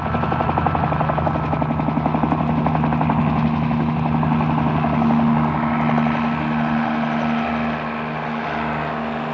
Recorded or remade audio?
recorded